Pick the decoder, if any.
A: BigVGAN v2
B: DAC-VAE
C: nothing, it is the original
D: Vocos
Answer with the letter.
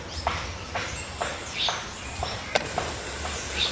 A